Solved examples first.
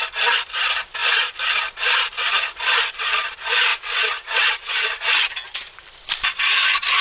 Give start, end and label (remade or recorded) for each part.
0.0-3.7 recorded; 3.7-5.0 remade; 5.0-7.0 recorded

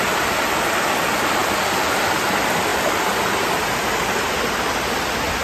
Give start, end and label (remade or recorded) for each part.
0.0-5.4 recorded

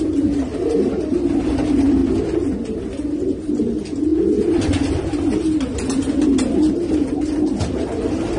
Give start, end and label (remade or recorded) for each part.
0.0-8.4 recorded

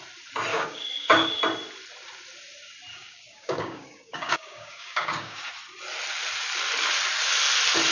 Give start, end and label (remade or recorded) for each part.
0.0-0.5 recorded; 0.5-1.4 remade; 1.4-2.9 recorded; 2.9-5.5 remade; 5.5-7.9 recorded

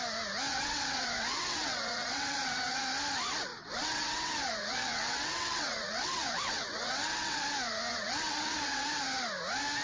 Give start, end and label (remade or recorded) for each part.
0.0-0.5 recorded; 0.5-2.8 remade; 2.8-3.5 recorded; 3.5-7.4 remade; 7.4-7.9 recorded; 7.9-8.9 remade; 8.9-9.8 recorded

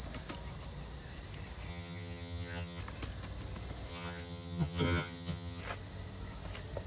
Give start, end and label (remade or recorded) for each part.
0.0-1.7 recorded; 1.7-2.8 remade; 2.8-3.9 recorded; 3.9-5.6 remade; 5.6-6.9 recorded

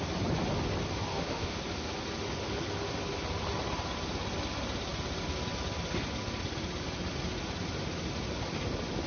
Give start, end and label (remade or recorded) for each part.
0.0-1.1 recorded; 1.1-1.6 remade; 1.6-9.1 recorded

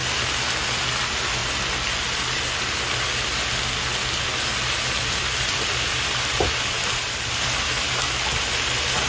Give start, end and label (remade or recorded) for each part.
0.0-4.5 recorded; 4.5-8.1 remade; 8.1-9.1 recorded